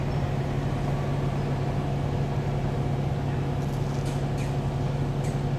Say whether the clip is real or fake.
real